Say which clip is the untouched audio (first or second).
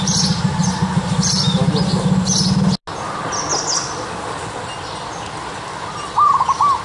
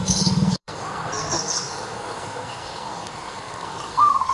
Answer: first